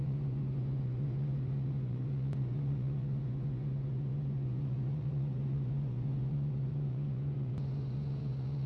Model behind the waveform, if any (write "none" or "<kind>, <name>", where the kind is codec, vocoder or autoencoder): vocoder, Vocos